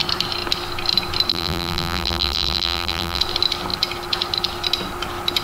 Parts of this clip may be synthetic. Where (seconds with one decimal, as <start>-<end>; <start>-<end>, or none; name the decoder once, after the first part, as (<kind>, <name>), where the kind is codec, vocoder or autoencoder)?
1.3-3.2 (vocoder, BigVGAN v2)